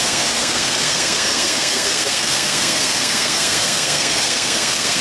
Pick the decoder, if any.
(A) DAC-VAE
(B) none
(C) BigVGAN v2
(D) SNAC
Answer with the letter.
D